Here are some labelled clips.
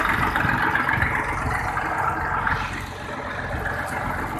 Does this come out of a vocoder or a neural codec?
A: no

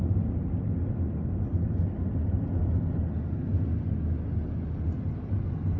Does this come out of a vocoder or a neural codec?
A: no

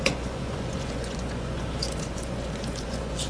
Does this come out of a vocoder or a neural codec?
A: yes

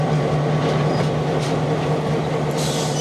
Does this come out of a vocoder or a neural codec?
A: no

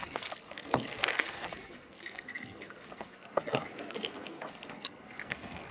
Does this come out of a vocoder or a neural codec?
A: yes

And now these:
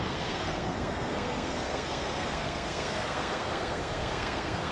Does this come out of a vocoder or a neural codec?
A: yes